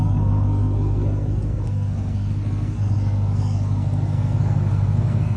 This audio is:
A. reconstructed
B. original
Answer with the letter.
A